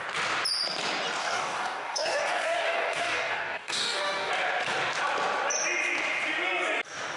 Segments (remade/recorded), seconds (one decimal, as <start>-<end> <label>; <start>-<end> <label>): 0.0-1.2 recorded; 1.2-4.3 remade; 4.3-7.2 recorded